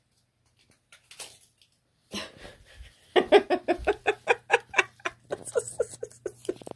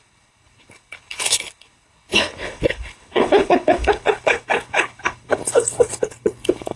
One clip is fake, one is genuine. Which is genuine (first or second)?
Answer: first